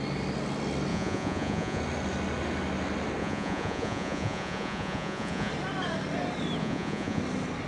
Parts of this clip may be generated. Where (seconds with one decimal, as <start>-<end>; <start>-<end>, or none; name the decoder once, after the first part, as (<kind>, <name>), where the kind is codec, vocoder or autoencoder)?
0.9-1.8 (vocoder, Vocos); 3.2-5.5; 6.6-7.2